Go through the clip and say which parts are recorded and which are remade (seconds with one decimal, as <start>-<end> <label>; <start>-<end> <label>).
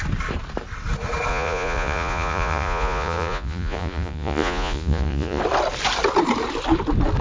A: 0.0-1.3 recorded; 1.3-5.4 remade; 5.4-7.2 recorded